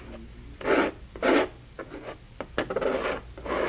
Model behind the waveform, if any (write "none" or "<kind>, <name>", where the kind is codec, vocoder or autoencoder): none